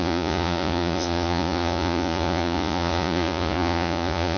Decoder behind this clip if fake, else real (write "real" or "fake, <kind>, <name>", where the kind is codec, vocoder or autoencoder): fake, vocoder, Vocos